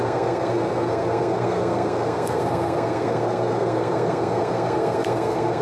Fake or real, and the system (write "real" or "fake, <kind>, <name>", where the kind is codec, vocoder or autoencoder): fake, codec, SNAC